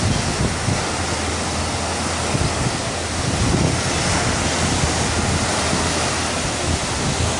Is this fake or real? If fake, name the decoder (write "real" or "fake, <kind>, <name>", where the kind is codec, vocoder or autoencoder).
real